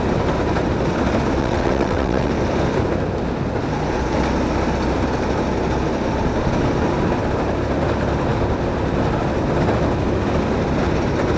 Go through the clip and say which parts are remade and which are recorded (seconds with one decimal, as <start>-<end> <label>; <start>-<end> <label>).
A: 0.0-1.4 recorded; 1.4-2.3 remade; 2.3-11.4 recorded